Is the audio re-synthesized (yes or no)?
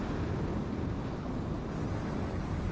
no